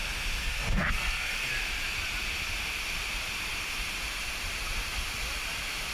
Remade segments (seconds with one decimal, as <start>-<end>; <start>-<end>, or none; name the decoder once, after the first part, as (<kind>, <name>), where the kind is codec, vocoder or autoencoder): 0.4-1.5 (codec, SNAC)